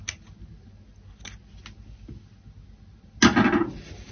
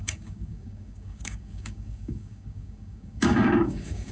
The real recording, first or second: first